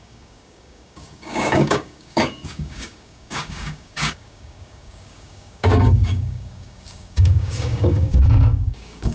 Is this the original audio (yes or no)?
no